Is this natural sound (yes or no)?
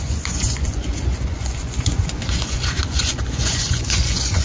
no